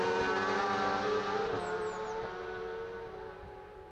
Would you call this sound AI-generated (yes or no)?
no